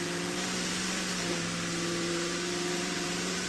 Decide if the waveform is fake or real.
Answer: fake